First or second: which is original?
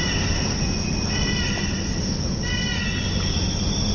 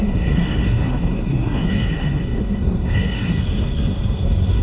first